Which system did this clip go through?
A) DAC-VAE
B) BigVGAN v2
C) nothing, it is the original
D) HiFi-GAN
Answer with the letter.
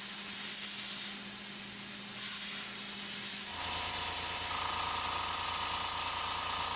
C